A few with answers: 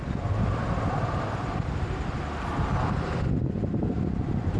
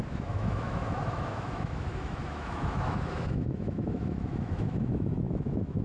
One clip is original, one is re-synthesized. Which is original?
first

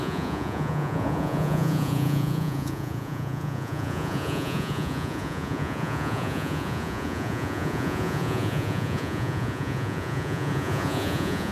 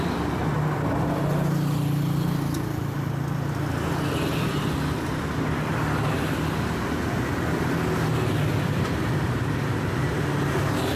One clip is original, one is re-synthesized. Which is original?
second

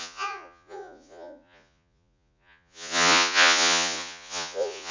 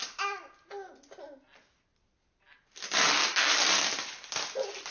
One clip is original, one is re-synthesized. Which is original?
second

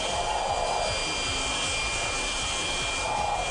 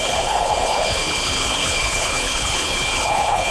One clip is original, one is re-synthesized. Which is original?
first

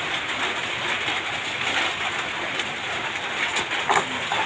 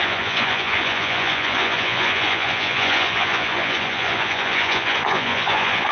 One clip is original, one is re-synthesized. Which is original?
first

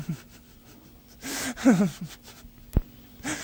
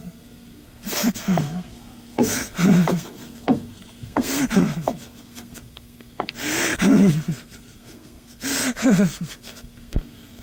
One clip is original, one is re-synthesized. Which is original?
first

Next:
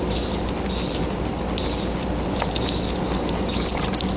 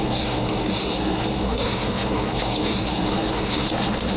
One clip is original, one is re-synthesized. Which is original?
first